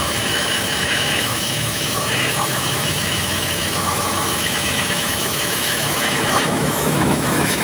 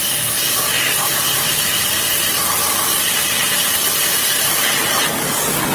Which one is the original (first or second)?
second